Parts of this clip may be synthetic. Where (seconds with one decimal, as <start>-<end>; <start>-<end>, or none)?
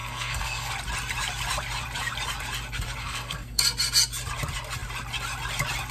0.0-0.7; 3.0-3.6